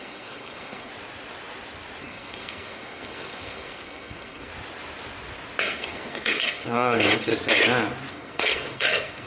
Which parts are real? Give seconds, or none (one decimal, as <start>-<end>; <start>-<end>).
0.9-2.0; 4.5-5.6; 7.3-8.1